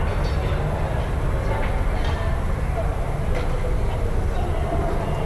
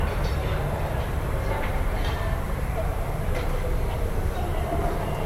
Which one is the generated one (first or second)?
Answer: second